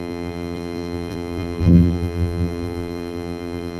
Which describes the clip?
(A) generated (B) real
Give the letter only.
A